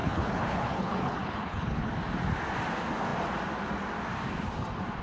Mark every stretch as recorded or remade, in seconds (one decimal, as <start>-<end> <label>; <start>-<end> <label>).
0.0-1.9 remade; 1.9-5.0 recorded